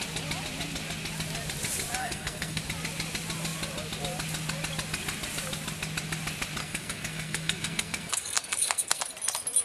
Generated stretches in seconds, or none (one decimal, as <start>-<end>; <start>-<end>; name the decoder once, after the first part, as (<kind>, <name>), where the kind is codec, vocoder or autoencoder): 2.0-2.6 (codec, SNAC); 6.6-9.0